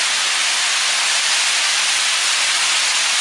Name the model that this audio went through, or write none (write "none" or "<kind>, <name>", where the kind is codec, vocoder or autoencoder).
none